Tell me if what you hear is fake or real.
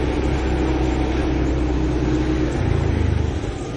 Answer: real